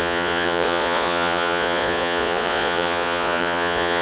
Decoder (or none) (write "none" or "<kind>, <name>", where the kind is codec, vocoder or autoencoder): vocoder, Vocos